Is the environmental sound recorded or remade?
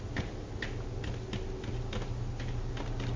recorded